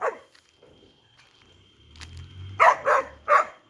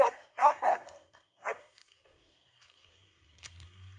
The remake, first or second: second